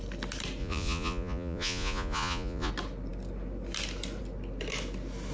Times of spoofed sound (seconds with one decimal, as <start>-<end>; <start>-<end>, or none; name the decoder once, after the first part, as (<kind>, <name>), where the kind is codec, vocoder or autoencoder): 0.6-2.7 (vocoder, Vocos)

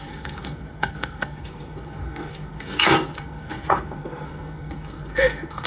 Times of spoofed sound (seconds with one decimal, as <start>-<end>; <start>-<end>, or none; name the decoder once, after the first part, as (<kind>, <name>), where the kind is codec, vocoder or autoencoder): 0.0-5.7 (codec, SNAC)

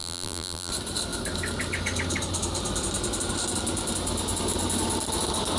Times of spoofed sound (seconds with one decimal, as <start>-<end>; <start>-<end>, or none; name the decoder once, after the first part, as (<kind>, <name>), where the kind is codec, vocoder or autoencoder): 0.0-0.7 (vocoder, BigVGAN v2)

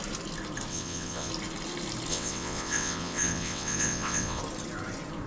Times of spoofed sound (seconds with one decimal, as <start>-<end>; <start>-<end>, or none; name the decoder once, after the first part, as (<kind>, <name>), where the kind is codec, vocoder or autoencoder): 0.7-1.3 (vocoder, WaveNeXt); 2.1-4.4

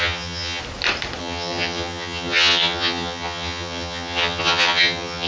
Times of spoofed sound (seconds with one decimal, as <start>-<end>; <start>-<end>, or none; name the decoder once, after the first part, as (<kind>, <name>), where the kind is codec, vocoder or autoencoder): 0.0-0.6 (vocoder, HiFi-GAN); 1.2-5.3

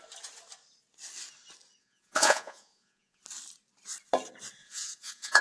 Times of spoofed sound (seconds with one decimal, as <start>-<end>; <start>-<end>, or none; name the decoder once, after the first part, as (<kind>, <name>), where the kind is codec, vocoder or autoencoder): 1.8-3.2 (vocoder, Vocos); 4.6-5.4

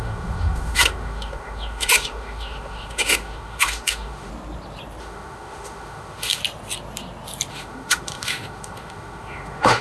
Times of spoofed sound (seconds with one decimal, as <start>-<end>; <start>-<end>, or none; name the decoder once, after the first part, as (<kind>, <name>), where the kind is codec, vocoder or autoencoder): 0.0-4.3 (autoencoder, DAC-VAE); 5.0-6.4; 7.5-9.8